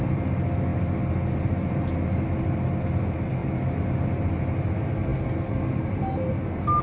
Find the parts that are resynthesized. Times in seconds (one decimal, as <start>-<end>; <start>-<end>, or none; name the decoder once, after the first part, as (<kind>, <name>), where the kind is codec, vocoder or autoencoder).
none